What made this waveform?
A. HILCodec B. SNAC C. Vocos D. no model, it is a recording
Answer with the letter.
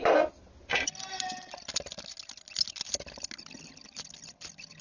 D